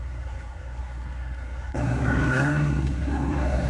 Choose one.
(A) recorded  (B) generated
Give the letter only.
B